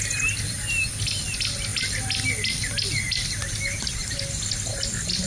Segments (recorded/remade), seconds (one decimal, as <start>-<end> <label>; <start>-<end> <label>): 0.0-5.3 recorded